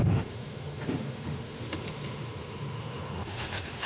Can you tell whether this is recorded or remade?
remade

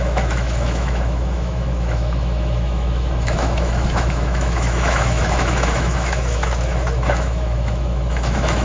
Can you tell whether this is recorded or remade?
remade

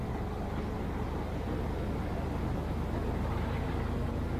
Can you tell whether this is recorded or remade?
recorded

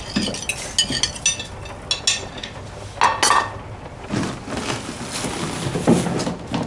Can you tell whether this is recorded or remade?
recorded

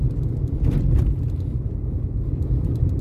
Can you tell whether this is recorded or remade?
recorded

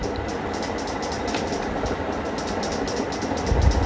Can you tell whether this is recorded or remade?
recorded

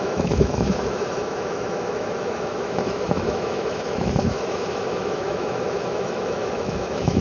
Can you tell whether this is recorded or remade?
remade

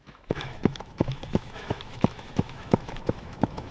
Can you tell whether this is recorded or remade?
remade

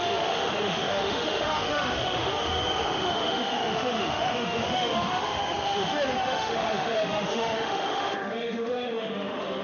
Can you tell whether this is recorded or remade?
remade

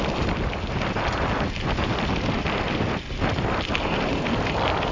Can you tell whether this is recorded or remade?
recorded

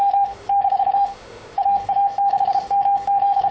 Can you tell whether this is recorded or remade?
remade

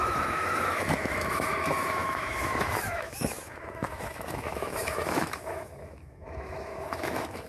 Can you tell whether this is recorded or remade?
remade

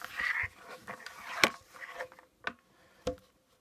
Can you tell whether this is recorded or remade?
recorded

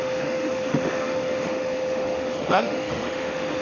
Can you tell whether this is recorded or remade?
remade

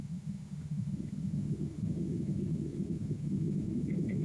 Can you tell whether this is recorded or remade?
remade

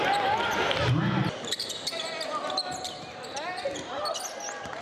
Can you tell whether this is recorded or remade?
recorded